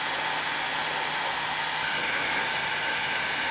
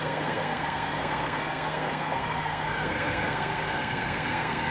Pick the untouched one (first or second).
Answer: first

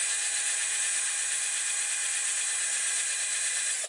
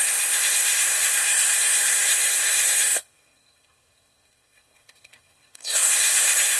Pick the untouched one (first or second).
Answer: first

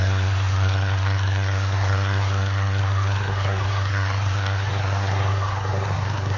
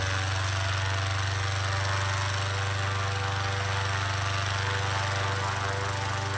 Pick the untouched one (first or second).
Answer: second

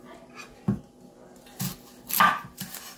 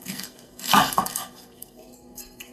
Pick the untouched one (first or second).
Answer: first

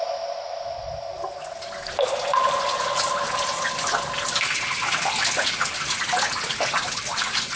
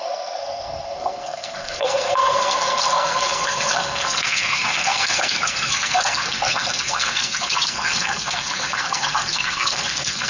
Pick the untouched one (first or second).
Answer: first